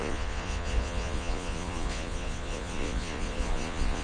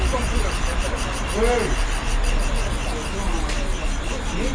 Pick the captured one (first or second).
second